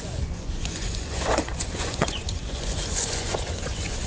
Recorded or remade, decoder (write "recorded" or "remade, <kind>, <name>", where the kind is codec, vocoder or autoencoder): remade, vocoder, Vocos